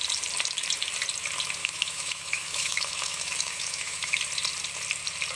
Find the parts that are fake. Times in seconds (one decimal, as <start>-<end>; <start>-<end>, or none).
1.6-4.2